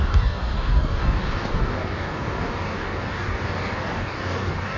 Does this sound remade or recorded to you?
remade